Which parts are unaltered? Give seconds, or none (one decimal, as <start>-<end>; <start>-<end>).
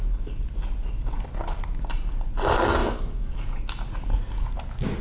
0.0-2.8; 3.6-5.0